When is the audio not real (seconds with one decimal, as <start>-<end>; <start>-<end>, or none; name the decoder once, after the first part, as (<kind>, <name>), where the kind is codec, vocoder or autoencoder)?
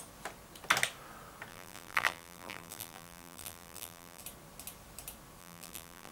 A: 1.5-4.2 (vocoder, BigVGAN v2); 5.4-6.1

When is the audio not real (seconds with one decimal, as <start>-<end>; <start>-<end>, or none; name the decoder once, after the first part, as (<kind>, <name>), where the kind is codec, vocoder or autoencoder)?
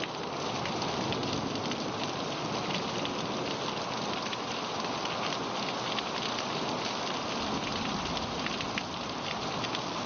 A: 7.7-8.5 (vocoder, BigVGAN v2)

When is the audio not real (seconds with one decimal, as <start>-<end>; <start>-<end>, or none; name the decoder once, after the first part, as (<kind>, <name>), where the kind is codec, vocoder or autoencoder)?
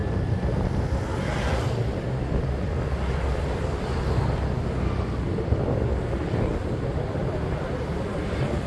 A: none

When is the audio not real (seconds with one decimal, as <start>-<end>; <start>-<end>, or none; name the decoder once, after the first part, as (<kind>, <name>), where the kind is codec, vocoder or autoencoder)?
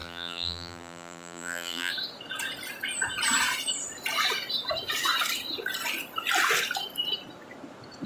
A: 0.0-1.9 (vocoder, BigVGAN v2)